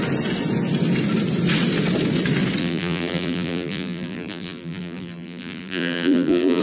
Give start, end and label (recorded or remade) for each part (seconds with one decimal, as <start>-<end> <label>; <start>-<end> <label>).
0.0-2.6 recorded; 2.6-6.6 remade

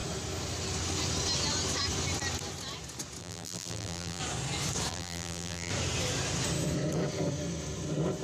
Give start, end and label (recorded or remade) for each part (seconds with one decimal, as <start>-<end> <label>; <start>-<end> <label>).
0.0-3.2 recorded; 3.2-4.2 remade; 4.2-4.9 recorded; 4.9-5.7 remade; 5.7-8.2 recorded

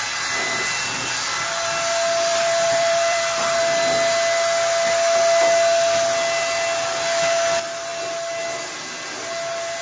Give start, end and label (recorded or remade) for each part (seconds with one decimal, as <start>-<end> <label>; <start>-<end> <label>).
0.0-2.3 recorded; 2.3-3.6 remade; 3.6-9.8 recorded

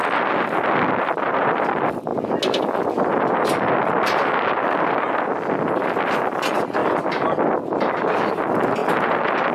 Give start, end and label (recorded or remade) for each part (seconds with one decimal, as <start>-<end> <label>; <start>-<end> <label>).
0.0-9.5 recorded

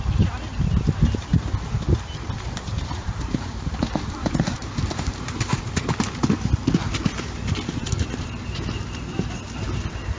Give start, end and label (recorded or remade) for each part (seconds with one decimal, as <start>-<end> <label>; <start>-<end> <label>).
0.0-2.7 recorded; 2.7-5.8 remade; 5.8-10.2 recorded

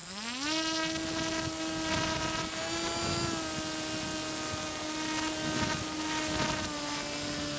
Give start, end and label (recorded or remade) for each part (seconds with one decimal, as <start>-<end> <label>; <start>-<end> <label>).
0.0-7.6 recorded